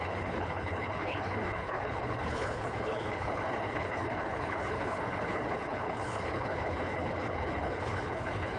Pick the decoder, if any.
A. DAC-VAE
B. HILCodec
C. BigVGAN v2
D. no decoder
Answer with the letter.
B